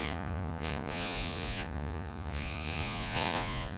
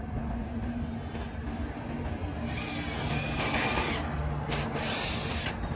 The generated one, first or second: first